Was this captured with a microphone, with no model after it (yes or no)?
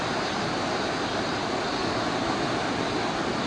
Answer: no